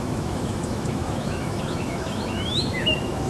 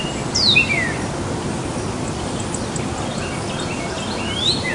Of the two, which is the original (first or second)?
second